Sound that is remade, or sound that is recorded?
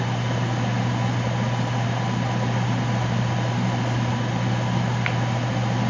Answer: recorded